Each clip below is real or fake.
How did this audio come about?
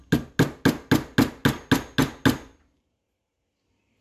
real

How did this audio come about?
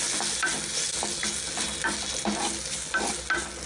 real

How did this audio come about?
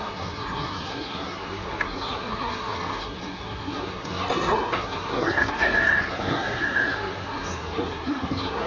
fake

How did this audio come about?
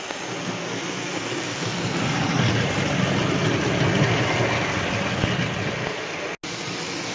real